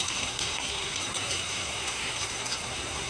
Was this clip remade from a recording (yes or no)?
yes